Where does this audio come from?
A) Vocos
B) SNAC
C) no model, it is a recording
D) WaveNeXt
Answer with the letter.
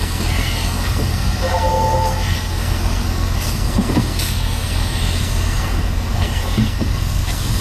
B